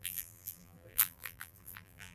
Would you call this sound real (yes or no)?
no